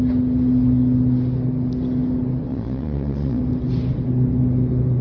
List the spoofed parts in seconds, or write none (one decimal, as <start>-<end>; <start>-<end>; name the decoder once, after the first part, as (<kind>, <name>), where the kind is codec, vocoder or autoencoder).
2.5-3.4 (vocoder, Vocos)